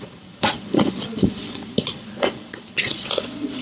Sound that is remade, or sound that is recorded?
remade